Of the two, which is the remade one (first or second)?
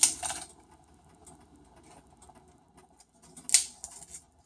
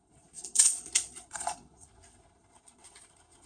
second